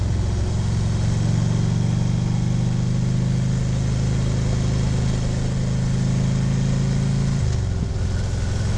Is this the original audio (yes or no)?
yes